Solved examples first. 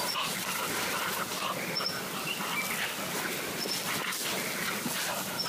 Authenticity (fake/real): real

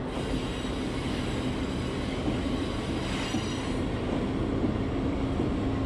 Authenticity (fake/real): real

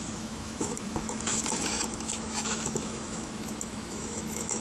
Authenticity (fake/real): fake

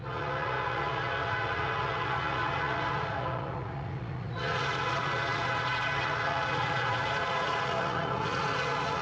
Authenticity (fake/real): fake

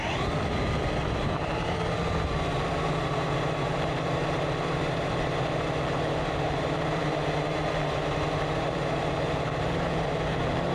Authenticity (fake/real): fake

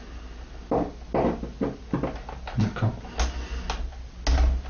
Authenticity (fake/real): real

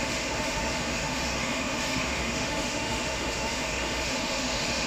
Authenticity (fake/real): fake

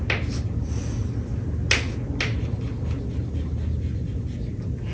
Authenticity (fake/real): real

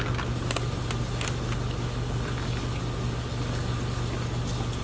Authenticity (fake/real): real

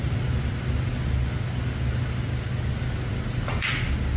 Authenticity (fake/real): real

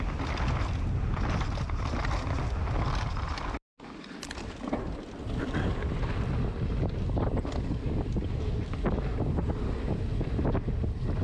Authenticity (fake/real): real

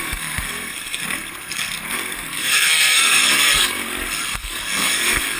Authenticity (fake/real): fake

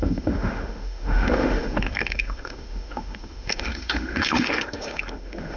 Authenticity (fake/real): fake